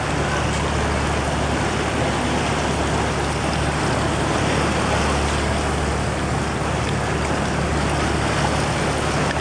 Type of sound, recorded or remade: recorded